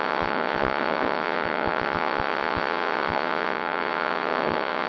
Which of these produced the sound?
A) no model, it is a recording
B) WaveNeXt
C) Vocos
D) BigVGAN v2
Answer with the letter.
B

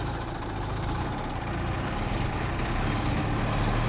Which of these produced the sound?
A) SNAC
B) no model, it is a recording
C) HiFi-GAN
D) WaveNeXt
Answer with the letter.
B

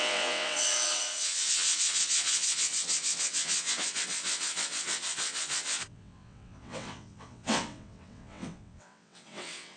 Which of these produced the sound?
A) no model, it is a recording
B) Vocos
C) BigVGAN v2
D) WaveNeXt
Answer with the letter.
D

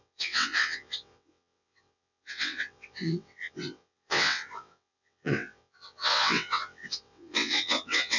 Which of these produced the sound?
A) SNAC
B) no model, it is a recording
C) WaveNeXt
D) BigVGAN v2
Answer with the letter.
C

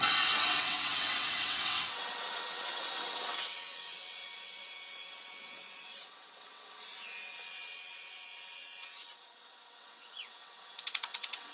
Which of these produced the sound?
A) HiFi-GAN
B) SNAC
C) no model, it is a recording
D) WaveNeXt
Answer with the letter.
D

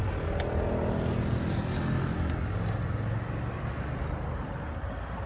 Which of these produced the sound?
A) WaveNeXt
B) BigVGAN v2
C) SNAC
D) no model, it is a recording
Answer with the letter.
D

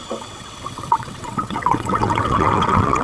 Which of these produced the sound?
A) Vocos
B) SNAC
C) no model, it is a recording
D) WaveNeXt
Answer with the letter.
D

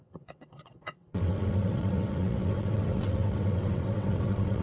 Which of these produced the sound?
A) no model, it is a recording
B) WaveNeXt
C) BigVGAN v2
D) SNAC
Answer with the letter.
B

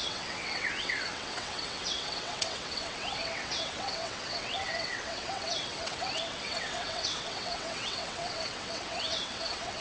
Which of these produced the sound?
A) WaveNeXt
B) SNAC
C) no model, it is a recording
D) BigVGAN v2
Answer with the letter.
A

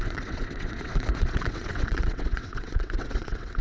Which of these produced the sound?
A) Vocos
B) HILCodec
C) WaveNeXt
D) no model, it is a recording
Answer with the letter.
C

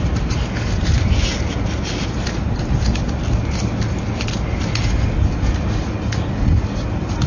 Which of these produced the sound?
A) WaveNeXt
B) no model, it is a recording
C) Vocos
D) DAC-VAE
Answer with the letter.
B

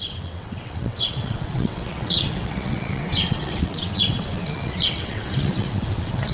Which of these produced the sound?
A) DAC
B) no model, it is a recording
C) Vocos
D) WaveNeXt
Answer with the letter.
D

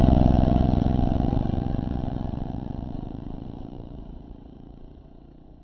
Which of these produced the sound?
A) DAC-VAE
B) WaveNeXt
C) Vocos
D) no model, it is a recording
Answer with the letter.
B